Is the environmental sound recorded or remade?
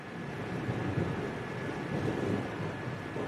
recorded